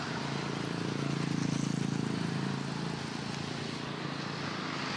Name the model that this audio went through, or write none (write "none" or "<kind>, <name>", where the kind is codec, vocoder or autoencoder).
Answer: none